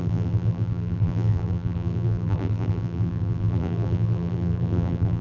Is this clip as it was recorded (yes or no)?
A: no